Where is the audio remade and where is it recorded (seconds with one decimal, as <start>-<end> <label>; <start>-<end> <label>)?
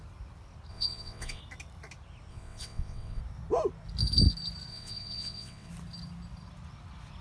0.0-0.7 recorded; 0.7-1.4 remade; 1.4-2.3 recorded; 2.3-3.2 remade; 3.2-4.7 recorded; 4.7-5.7 remade; 5.7-7.2 recorded